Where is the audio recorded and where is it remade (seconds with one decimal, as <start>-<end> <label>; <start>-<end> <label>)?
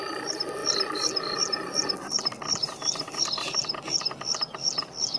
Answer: 0.0-5.2 recorded